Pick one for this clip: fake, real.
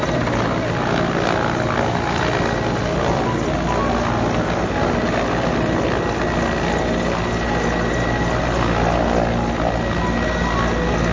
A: real